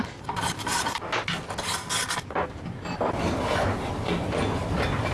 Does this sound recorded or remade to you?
recorded